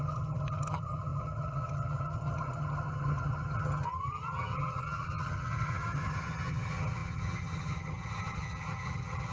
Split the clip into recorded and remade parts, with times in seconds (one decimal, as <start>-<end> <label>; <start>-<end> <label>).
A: 0.0-9.3 remade